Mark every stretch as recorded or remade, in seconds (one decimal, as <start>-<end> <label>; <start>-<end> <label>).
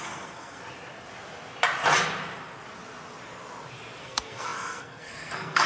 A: 0.0-0.6 remade; 0.6-4.0 recorded; 4.0-5.7 remade